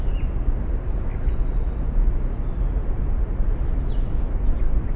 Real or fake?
real